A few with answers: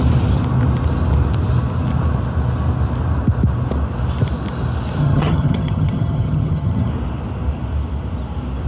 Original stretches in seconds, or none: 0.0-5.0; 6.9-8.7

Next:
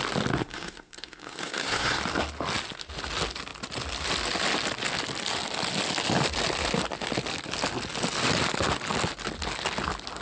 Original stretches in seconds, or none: 0.0-0.4; 2.0-10.2

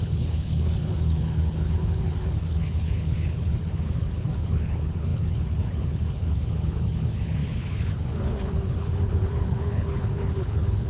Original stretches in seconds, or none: none

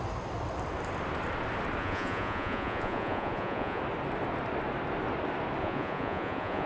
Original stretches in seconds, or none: 0.0-1.8; 3.8-5.6

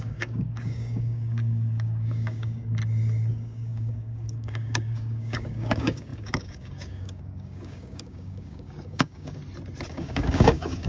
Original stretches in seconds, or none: 2.8-3.3; 9.4-9.9

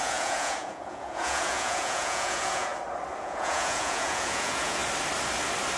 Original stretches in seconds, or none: 2.7-3.2; 4.8-5.8